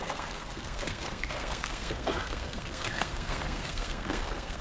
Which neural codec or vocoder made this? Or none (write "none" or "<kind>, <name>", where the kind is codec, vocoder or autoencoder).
codec, SNAC